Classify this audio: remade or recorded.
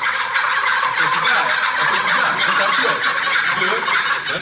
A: remade